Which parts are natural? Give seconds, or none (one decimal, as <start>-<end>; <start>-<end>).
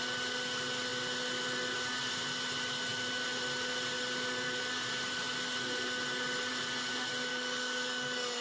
0.0-7.3